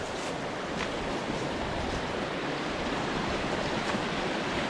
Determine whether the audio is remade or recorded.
recorded